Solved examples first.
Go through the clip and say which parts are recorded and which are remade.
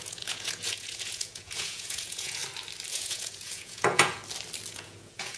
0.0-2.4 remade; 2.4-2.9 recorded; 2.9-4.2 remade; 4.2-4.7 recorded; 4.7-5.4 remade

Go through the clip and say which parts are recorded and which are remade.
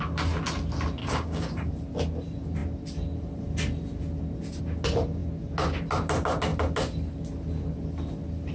0.0-1.0 recorded; 1.0-1.7 remade; 1.7-8.5 recorded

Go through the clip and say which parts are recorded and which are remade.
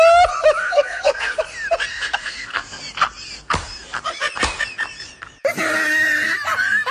0.0-0.6 recorded; 0.6-1.4 remade; 1.4-1.9 recorded; 1.9-2.8 remade; 2.8-6.9 recorded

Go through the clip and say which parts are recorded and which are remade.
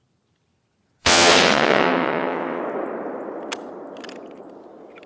0.0-1.0 recorded; 1.0-2.6 remade; 2.6-5.1 recorded